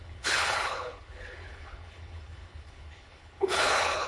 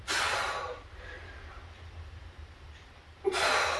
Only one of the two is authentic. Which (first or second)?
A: second